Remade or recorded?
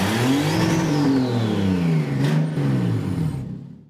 recorded